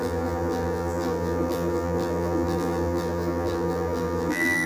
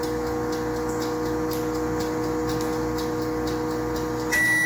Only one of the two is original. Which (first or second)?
second